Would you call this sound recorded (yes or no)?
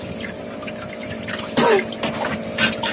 yes